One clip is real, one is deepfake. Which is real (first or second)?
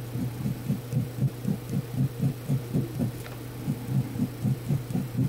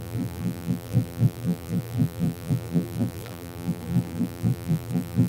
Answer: first